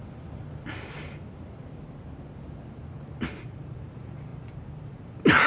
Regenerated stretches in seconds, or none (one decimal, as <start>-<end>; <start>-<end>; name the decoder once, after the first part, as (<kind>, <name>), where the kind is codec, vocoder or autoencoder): 3.3-5.5 (vocoder, BigVGAN v2)